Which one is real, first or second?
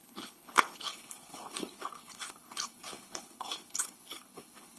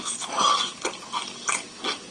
second